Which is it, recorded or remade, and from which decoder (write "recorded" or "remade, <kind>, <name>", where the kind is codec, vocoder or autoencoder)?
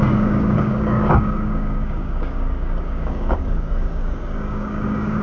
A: remade, codec, DAC